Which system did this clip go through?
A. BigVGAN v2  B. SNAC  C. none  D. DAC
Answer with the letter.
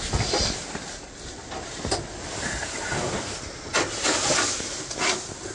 C